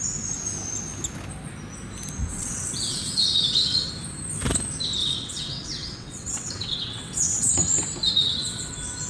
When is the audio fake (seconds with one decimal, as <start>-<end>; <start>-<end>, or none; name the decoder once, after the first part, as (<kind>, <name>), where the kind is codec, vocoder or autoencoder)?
2.3-3.9 (vocoder, WaveNeXt); 5.0-7.5; 8.2-8.7